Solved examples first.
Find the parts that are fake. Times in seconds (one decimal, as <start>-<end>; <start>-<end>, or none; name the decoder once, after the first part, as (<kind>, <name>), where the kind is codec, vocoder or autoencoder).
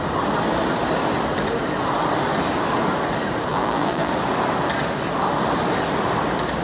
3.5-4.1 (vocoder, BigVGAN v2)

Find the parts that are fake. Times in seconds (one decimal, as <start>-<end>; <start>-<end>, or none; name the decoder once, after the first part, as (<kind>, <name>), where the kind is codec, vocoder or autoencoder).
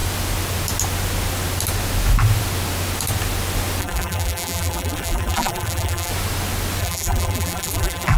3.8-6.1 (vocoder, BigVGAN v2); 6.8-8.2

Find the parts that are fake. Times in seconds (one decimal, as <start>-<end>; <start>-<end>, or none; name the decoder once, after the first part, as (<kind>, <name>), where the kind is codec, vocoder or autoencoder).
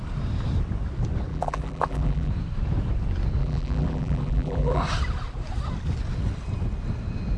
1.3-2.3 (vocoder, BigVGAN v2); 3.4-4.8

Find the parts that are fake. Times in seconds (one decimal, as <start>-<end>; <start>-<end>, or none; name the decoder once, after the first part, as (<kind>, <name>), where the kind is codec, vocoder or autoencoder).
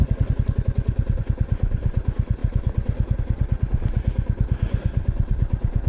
none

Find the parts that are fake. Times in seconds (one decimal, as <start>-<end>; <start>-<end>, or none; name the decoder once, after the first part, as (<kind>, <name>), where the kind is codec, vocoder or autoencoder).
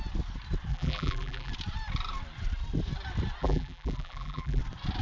0.7-1.5 (vocoder, BigVGAN v2); 3.4-4.6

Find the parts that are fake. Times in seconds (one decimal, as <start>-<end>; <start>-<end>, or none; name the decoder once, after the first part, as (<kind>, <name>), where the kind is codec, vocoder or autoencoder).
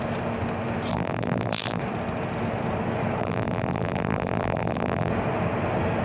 0.9-1.8 (vocoder, BigVGAN v2); 3.2-5.1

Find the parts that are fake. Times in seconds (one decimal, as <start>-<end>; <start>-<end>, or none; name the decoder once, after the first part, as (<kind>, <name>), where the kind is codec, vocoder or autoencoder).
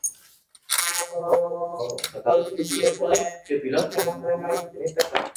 0.8-1.8 (vocoder, BigVGAN v2); 2.3-3.5; 3.9-4.8